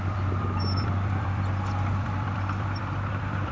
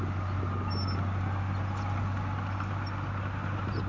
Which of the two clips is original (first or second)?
second